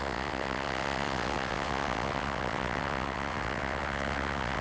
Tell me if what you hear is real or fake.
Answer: fake